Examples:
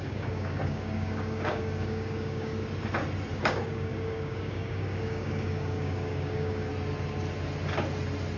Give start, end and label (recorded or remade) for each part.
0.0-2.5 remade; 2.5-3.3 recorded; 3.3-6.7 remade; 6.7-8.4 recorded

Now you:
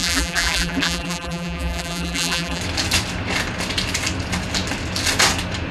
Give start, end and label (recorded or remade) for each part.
0.0-2.6 remade; 2.6-5.7 recorded

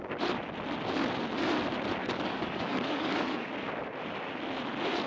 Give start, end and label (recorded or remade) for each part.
0.0-2.0 recorded; 2.0-3.5 remade; 3.5-5.1 recorded

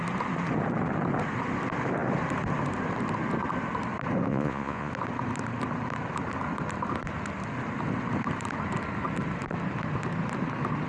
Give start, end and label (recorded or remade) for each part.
0.0-4.3 recorded; 4.3-4.9 remade; 4.9-10.9 recorded